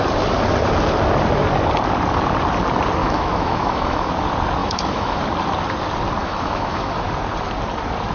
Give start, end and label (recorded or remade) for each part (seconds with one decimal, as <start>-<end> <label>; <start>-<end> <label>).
0.0-3.0 recorded; 3.0-4.1 remade; 4.1-4.6 recorded; 4.6-5.2 remade; 5.2-6.2 recorded; 6.2-7.0 remade; 7.0-8.1 recorded